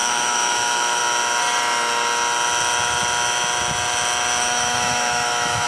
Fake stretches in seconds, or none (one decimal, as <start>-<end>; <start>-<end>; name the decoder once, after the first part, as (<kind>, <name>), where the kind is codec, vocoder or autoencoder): 0.0-1.0 (autoencoder, DAC-VAE); 4.4-5.7